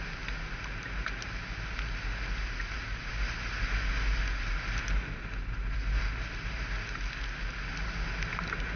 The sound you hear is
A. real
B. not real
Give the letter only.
A